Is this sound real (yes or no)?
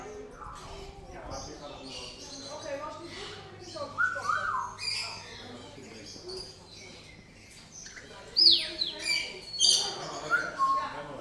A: yes